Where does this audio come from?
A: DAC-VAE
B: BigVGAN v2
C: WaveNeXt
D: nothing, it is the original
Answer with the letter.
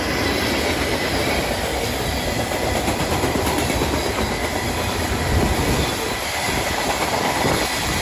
B